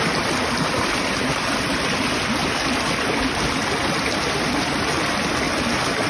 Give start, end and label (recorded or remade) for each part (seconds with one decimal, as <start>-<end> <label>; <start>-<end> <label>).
0.0-6.1 recorded